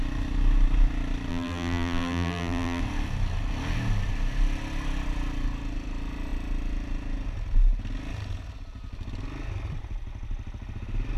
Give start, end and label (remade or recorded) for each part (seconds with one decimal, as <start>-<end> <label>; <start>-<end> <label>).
0.0-1.3 recorded; 1.3-2.8 remade; 2.8-11.2 recorded